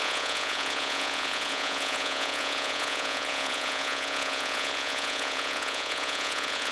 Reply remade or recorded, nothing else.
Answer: remade